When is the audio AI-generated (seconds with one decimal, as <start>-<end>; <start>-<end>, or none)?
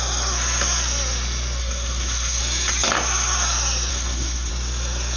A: 1.6-2.4; 3.9-4.5